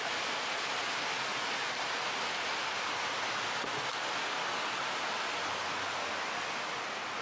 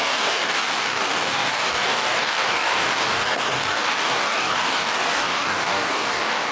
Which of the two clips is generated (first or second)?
second